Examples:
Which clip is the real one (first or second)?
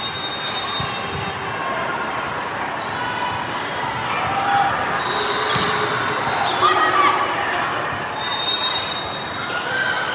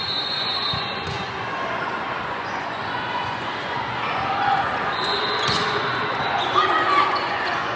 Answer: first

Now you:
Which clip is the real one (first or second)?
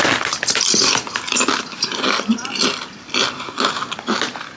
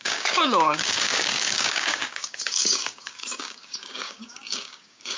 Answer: first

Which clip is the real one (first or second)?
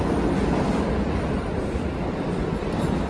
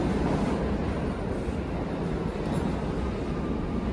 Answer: second